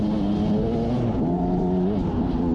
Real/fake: real